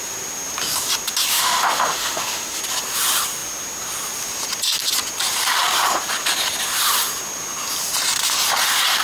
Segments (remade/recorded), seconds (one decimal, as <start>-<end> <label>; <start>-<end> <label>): 0.0-1.3 recorded; 1.3-2.6 remade; 2.6-9.0 recorded